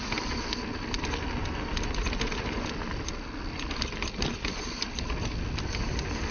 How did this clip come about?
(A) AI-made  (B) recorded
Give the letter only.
B